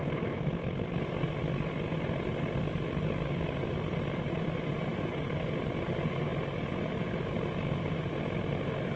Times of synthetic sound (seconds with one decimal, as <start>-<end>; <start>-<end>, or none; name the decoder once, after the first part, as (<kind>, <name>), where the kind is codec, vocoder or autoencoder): none